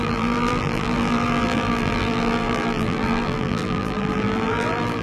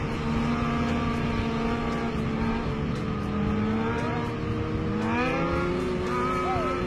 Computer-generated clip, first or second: first